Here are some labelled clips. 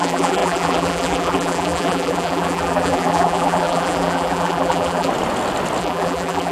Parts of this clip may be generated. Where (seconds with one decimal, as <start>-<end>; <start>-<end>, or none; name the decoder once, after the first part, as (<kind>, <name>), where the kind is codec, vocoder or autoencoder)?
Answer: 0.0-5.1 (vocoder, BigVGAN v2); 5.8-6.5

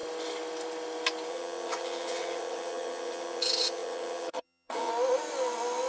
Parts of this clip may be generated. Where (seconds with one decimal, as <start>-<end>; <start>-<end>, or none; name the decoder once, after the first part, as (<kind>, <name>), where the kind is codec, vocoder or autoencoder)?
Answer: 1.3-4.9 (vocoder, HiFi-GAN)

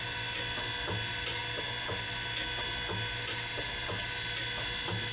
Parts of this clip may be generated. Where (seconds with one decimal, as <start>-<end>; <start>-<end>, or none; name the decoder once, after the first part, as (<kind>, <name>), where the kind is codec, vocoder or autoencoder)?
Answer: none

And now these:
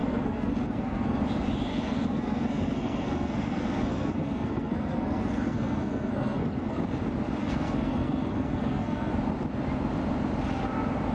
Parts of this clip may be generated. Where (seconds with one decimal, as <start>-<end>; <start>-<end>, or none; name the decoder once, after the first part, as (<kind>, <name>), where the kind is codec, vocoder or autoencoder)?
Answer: 0.0-1.2 (codec, SNAC); 1.7-6.8; 7.4-9.1

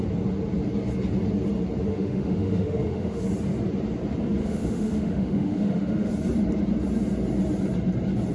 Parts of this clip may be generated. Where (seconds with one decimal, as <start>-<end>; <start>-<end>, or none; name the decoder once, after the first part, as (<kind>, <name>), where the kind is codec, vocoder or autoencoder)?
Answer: 1.9-3.2 (autoencoder, DAC-VAE); 4.4-6.1

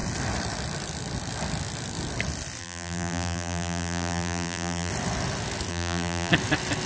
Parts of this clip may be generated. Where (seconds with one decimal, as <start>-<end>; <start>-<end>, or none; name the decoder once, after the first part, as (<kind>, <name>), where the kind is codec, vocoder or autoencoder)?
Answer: 2.6-4.9 (vocoder, BigVGAN v2); 5.7-6.3